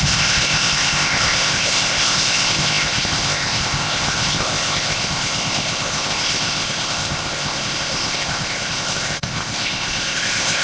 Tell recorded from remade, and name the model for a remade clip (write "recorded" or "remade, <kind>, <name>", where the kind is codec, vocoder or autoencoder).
remade, codec, ZipCodec